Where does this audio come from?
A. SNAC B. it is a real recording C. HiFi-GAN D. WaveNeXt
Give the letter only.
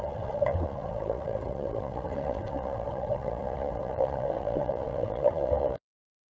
D